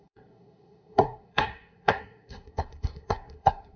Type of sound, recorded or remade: remade